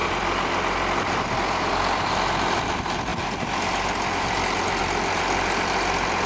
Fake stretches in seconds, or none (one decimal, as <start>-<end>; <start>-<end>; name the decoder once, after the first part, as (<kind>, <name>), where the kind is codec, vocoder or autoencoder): none